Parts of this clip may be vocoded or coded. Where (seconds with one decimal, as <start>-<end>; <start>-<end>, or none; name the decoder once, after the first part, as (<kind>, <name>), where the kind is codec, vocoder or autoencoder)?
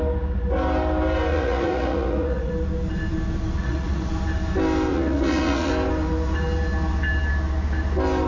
1.3-2.5 (vocoder, Vocos); 3.6-4.1; 4.9-5.7